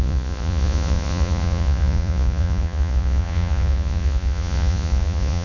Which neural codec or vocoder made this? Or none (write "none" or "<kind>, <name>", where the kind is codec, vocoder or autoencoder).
vocoder, Vocos